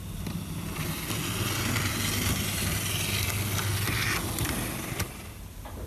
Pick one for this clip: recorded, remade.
recorded